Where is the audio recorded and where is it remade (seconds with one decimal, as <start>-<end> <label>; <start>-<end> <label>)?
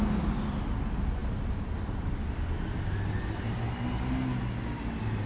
0.0-5.3 recorded